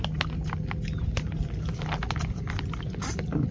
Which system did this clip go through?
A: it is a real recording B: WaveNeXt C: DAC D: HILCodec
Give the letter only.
A